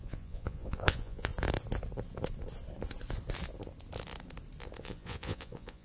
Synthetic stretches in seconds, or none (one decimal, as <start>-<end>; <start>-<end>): 0.0-1.3; 4.8-5.8